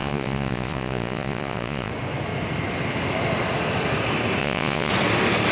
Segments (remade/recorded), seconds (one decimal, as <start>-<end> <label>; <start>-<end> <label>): 0.0-1.9 remade; 1.9-4.4 recorded; 4.4-4.9 remade; 4.9-5.5 recorded